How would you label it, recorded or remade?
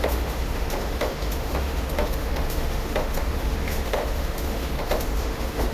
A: remade